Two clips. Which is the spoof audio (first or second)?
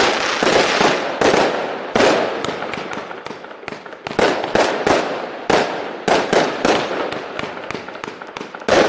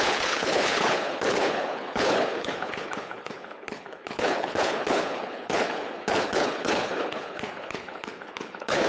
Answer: second